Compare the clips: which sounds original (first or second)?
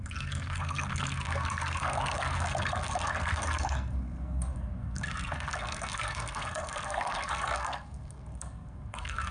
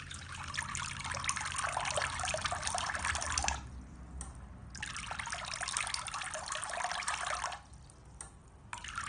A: second